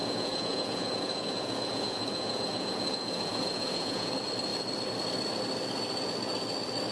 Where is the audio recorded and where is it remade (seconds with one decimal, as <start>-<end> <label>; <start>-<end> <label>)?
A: 0.0-4.1 remade; 4.1-6.9 recorded